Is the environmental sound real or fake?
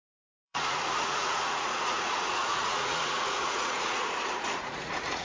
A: fake